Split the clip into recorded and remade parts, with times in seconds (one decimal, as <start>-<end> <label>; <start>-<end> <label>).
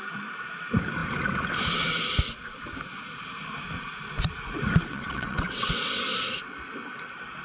0.0-4.9 recorded; 4.9-5.9 remade; 5.9-7.4 recorded